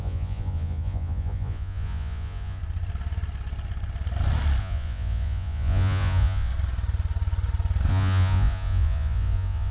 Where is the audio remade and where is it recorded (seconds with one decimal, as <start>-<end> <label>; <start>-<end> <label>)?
0.0-2.6 remade; 2.6-4.6 recorded; 4.6-6.5 remade; 6.5-7.9 recorded; 7.9-9.7 remade